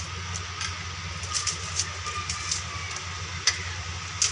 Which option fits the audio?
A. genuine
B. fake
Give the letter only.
A